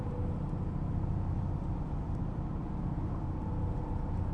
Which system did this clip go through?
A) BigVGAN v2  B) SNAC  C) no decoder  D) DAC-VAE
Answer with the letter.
A